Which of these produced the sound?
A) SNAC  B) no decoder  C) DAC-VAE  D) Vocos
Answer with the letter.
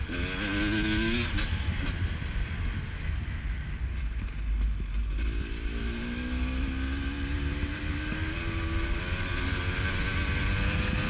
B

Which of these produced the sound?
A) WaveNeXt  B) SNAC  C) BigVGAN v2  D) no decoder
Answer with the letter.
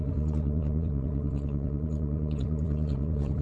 A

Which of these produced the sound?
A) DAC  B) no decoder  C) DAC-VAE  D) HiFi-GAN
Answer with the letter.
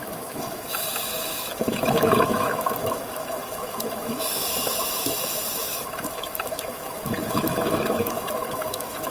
C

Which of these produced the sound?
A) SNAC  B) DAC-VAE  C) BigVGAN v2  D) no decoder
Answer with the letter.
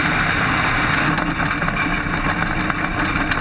D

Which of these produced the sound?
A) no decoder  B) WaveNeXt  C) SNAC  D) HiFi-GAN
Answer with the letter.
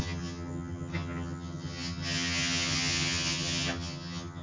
D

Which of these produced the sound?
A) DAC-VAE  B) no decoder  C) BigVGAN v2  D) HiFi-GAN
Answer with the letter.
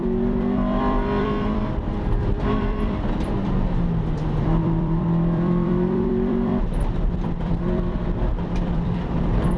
C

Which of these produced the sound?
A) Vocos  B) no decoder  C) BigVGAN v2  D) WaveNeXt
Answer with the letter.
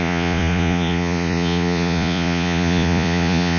A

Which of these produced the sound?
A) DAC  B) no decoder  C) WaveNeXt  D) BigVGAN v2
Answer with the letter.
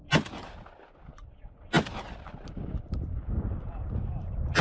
B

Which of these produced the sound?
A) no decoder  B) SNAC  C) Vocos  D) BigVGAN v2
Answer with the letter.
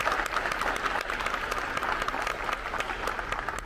A